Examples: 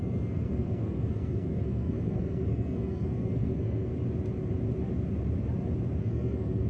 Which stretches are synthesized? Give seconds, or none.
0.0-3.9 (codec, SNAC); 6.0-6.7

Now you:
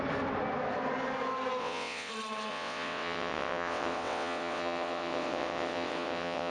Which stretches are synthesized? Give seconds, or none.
1.6-2.1 (vocoder, WaveNeXt); 2.5-6.5